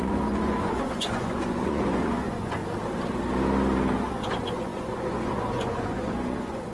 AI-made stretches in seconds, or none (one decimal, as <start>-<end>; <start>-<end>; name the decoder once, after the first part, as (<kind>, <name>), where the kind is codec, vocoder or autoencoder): 0.0-2.6 (vocoder, Vocos); 4.1-6.7